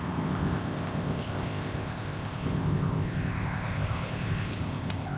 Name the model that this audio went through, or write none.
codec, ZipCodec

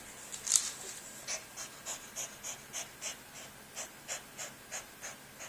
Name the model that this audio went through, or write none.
none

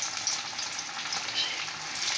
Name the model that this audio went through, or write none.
none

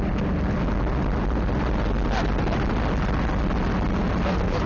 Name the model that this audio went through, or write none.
none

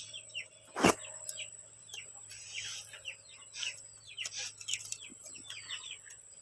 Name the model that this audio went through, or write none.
none